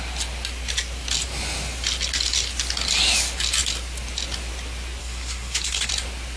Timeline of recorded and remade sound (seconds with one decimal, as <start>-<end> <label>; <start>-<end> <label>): 0.0-5.0 recorded; 5.0-5.9 remade; 5.9-6.4 recorded